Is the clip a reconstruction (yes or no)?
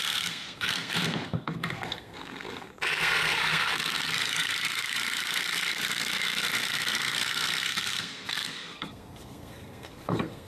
yes